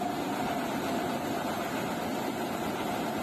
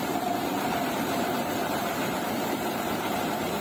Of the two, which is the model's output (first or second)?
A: second